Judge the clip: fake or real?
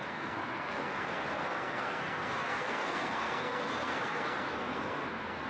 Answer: fake